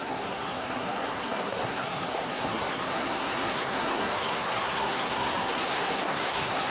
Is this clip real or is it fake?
fake